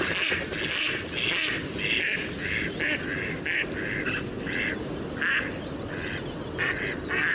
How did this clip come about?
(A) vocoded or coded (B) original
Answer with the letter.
B